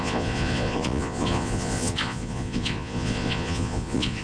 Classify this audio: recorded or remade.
remade